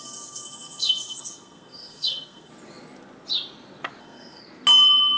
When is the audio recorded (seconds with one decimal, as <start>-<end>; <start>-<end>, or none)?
2.5-4.0; 4.4-5.2